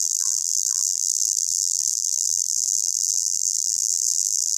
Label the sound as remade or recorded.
remade